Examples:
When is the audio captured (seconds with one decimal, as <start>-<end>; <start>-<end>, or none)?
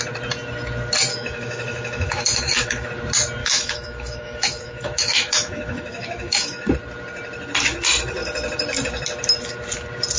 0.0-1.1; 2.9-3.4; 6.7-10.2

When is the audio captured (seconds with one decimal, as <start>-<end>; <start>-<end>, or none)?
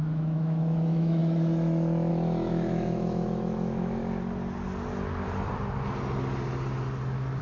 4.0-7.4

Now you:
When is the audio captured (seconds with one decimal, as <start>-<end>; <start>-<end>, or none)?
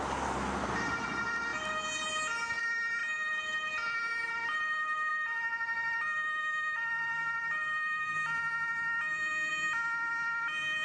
0.0-10.8